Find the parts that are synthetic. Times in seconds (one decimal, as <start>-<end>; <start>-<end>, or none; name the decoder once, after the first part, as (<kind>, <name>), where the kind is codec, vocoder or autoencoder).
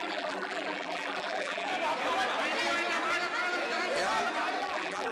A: 0.0-1.7 (vocoder, BigVGAN v2); 4.6-5.1